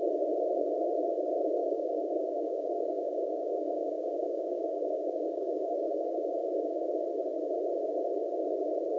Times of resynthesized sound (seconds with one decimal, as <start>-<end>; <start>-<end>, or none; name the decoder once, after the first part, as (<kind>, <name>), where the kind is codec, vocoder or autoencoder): 1.6-6.8 (codec, DAC)

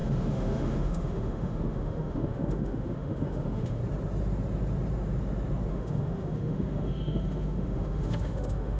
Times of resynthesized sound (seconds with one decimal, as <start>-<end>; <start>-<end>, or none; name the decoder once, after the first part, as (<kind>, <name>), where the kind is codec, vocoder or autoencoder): 0.0-3.8 (autoencoder, DAC-VAE); 5.7-8.8

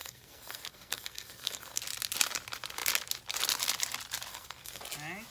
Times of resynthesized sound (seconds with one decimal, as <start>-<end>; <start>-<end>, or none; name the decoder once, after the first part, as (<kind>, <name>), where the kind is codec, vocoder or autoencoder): 0.0-1.8 (codec, SNAC); 4.3-4.8

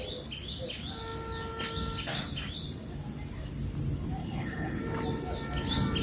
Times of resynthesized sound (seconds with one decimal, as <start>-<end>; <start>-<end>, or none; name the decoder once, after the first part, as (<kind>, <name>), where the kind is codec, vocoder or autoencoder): 4.2-4.8 (codec, HILCodec)

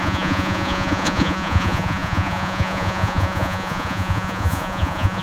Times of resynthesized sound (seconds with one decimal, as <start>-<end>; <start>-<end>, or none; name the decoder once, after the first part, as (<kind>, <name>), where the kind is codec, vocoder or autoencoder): 0.0-5.2 (vocoder, Vocos)